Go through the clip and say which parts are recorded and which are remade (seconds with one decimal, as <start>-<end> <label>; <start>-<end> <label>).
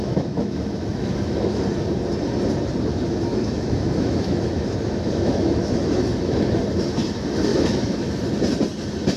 0.0-1.6 remade; 1.6-2.9 recorded; 2.9-6.6 remade; 6.6-7.5 recorded; 7.5-8.2 remade; 8.2-9.2 recorded